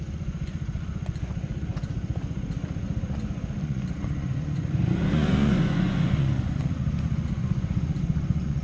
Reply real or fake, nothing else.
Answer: fake